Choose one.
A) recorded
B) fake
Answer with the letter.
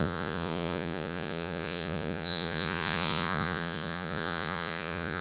B